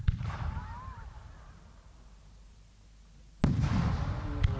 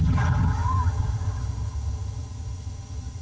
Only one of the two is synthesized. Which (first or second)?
second